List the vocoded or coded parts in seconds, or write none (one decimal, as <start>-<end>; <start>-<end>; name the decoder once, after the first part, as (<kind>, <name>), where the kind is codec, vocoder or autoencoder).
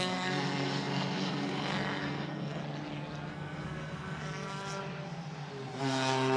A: 0.0-2.6 (codec, SNAC); 3.3-4.8; 5.8-6.4